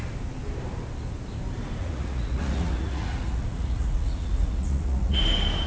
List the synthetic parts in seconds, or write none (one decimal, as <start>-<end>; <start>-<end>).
1.8-5.2